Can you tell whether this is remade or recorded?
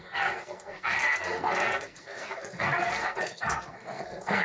remade